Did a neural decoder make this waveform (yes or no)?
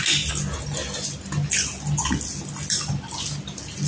no